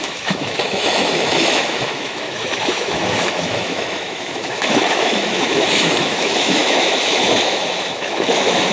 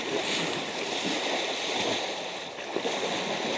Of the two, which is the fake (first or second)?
first